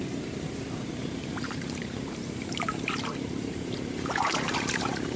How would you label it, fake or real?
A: fake